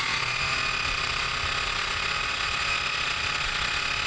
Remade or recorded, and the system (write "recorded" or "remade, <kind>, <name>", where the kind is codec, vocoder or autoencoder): remade, vocoder, Vocos